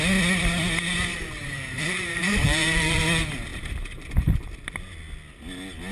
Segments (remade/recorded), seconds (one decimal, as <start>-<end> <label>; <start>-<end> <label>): 0.0-1.1 recorded; 1.1-3.0 remade; 3.0-3.5 recorded; 3.5-4.4 remade; 4.4-5.9 recorded